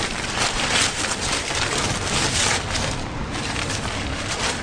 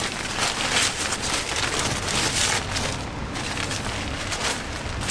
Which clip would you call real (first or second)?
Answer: second